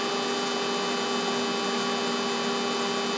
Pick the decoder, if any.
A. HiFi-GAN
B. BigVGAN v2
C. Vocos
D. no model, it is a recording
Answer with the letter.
D